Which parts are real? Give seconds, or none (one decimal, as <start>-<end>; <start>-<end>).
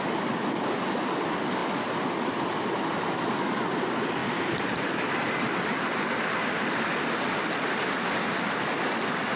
0.0-9.4